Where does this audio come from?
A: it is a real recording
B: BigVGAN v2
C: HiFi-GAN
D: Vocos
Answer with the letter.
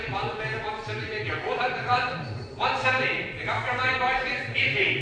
B